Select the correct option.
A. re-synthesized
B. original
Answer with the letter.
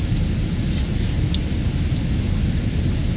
B